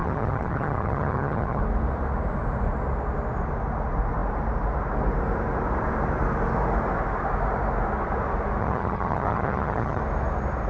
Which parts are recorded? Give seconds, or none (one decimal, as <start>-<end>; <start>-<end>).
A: 1.6-8.6; 10.0-10.7